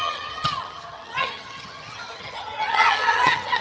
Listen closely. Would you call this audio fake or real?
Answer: fake